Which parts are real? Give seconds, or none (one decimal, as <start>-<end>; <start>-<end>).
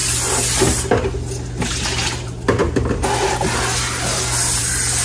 0.0-5.0